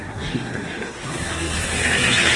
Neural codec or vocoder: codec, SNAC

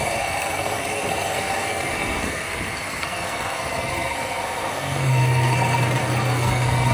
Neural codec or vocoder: codec, SNAC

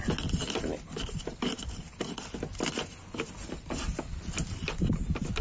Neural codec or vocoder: none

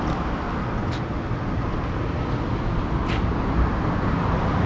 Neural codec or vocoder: none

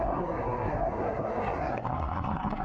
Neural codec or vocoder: codec, SNAC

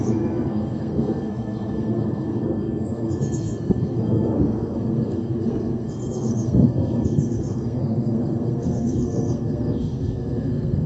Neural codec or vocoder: codec, SNAC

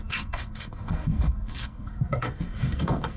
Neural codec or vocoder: codec, SNAC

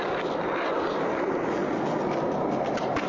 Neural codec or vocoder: none